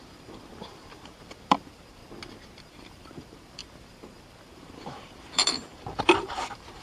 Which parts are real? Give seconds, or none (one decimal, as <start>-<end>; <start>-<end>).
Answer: 2.0-2.6